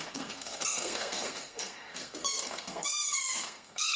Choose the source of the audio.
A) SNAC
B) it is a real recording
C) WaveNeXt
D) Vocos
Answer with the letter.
A